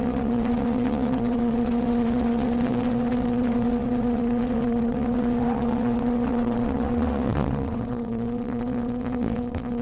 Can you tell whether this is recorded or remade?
remade